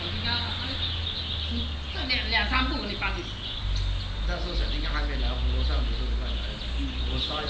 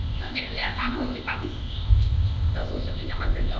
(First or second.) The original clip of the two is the first